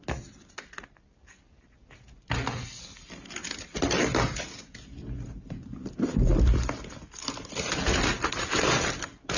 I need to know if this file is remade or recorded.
recorded